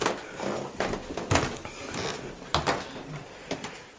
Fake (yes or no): no